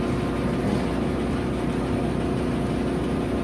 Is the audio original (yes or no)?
yes